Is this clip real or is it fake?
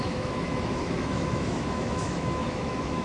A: fake